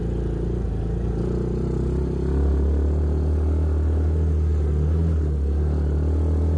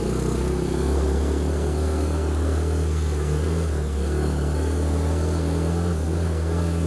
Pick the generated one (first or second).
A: second